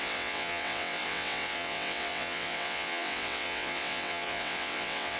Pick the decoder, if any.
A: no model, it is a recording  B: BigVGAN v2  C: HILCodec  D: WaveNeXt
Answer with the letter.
D